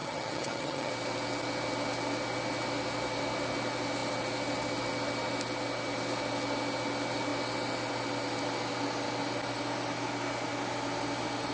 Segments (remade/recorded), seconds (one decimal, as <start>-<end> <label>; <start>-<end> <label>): 0.0-0.9 remade; 0.9-11.5 recorded